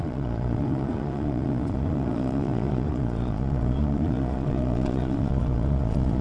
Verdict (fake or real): fake